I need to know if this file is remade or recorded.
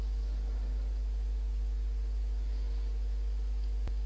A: recorded